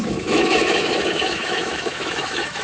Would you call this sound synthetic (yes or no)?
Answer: yes